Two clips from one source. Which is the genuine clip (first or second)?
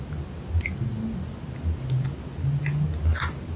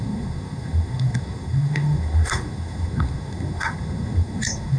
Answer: first